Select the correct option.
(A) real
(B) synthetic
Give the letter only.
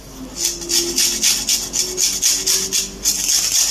A